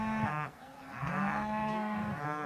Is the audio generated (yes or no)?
yes